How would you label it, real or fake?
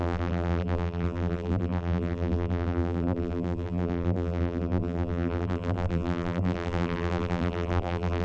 fake